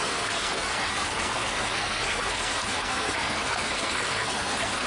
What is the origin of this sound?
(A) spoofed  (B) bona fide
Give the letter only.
A